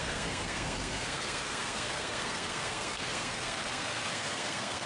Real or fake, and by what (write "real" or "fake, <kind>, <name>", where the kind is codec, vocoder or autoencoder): fake, codec, SNAC